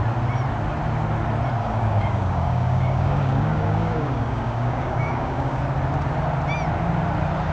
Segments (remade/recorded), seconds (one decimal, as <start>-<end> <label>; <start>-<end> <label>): 0.0-1.6 recorded; 1.6-5.6 remade; 5.6-7.5 recorded